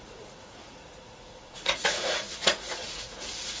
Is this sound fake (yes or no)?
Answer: yes